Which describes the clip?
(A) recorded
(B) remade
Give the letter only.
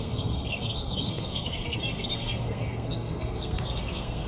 B